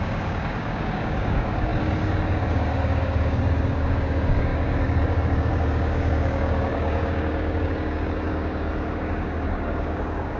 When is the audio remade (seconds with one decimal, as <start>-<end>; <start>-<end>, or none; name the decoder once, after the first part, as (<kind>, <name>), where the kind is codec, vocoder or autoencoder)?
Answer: 0.0-10.4 (codec, DAC)